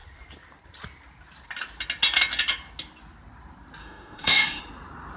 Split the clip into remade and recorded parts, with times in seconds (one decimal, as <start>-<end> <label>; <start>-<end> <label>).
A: 0.0-3.8 recorded; 3.8-4.6 remade; 4.6-5.2 recorded